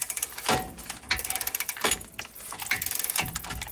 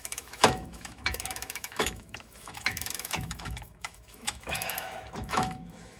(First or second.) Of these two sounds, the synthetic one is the second